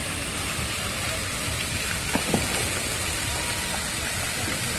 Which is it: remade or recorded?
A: remade